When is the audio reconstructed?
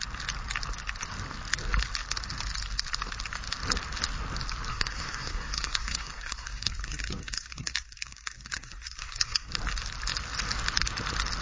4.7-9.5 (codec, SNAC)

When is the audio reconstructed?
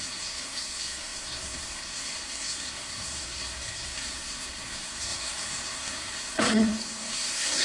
0.0-7.6 (codec, SNAC)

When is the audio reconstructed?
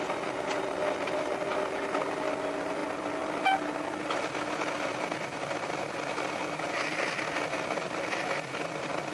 none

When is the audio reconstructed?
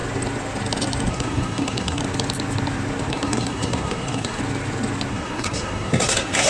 1.1-2.0 (codec, SNAC); 3.1-4.4; 5.1-6.5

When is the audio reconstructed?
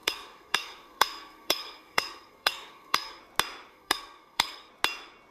0.0-3.2 (codec, SNAC); 3.7-4.7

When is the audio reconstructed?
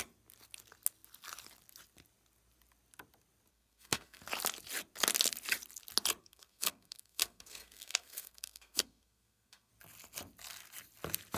3.5-4.2 (codec, SNAC); 6.2-9.7